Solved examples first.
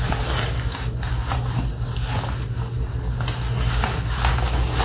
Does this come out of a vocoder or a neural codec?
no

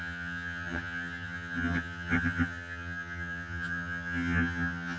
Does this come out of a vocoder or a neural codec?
yes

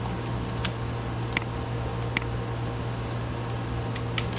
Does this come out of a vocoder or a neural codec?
no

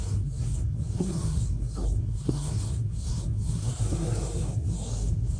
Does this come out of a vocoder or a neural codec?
yes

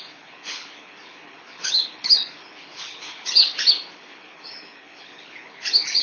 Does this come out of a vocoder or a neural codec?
yes